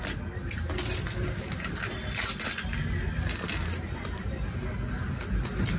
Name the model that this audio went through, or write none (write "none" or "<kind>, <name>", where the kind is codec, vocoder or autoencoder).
none